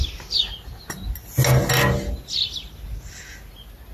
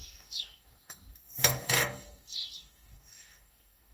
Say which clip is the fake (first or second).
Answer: second